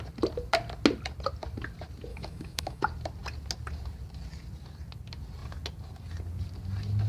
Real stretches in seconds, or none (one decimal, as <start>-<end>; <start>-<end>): 0.0-2.1; 2.8-7.1